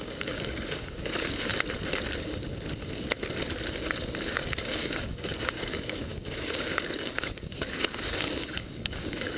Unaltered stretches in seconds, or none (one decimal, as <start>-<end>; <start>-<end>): 1.5-4.2